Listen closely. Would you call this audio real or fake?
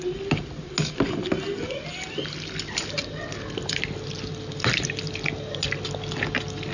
real